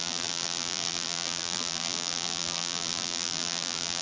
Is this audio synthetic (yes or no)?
yes